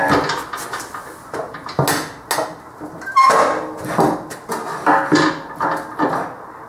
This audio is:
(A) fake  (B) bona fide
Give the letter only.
B